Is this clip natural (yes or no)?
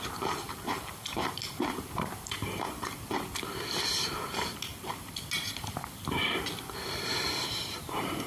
no